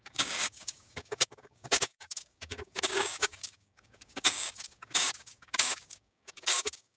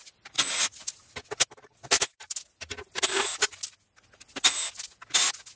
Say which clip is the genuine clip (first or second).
second